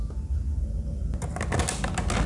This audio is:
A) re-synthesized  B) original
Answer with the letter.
B